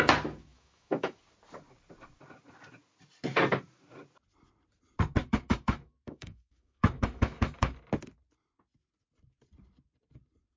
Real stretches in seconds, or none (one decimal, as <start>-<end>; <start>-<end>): 0.0-0.5; 1.2-5.2; 7.7-10.6